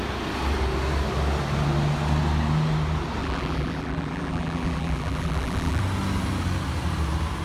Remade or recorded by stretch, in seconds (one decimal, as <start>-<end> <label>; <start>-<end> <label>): 0.0-3.2 recorded; 3.2-5.8 remade; 5.8-7.4 recorded